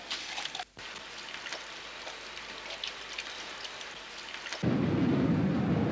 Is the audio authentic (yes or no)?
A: yes